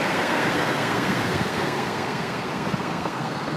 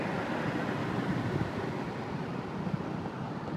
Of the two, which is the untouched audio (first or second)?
second